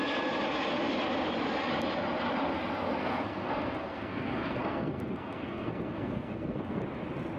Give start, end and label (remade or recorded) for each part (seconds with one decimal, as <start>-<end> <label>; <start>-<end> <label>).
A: 0.0-3.0 recorded; 3.0-6.8 remade; 6.8-7.4 recorded